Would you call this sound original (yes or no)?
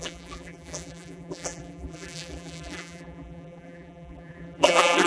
no